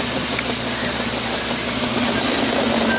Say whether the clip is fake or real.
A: real